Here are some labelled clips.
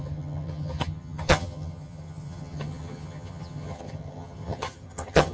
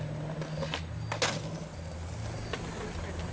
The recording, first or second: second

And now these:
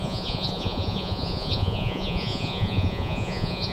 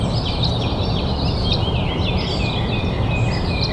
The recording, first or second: second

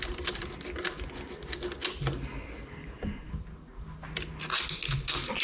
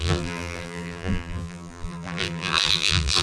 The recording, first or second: first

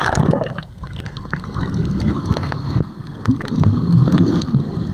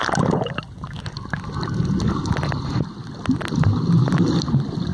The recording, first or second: second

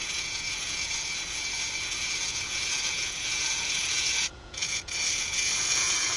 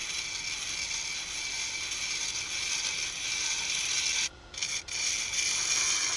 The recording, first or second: second